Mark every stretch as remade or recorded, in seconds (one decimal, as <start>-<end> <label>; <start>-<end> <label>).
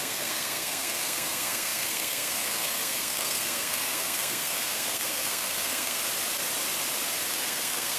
0.0-6.0 remade; 6.0-7.3 recorded; 7.3-8.0 remade